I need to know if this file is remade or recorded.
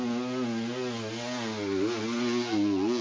recorded